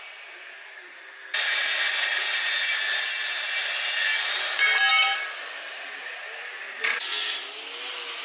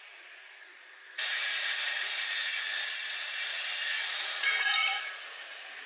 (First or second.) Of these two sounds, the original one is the first